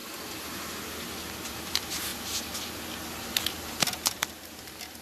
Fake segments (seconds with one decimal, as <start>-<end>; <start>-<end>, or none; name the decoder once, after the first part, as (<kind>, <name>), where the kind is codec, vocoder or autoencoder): 1.5-2.1 (vocoder, BigVGAN v2); 3.4-5.0